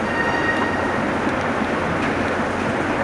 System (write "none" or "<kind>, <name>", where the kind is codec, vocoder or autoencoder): none